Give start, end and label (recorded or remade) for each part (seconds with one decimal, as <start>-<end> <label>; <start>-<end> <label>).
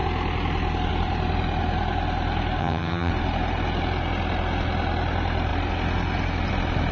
0.0-2.6 recorded; 2.6-3.1 remade; 3.1-6.9 recorded